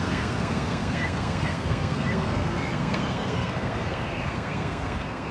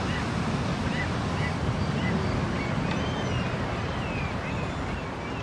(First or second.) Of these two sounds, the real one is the second